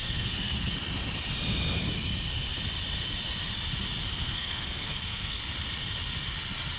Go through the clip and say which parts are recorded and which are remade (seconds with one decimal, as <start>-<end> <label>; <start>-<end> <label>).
0.0-0.7 remade; 0.7-4.1 recorded; 4.1-5.4 remade; 5.4-6.8 recorded